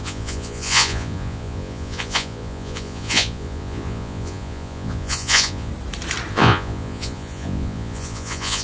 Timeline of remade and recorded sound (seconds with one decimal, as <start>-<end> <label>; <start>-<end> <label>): 0.0-5.7 remade; 5.7-6.3 recorded; 6.3-8.6 remade